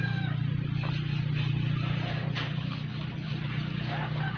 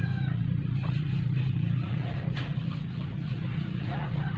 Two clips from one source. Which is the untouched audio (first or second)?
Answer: first